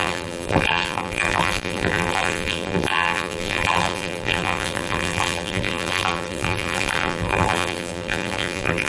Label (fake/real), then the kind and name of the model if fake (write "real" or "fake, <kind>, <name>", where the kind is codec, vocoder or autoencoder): fake, vocoder, BigVGAN v2